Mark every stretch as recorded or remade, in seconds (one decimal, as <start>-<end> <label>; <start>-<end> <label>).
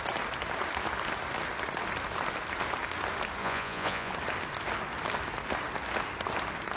0.0-3.4 recorded; 3.4-4.1 remade; 4.1-6.8 recorded